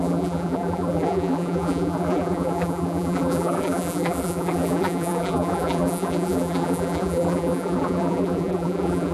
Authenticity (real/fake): fake